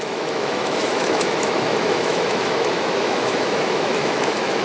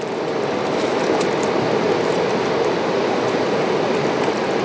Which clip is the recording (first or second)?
second